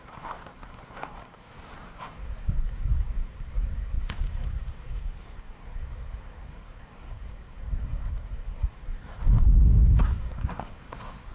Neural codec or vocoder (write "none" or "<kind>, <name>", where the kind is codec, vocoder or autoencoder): codec, SNAC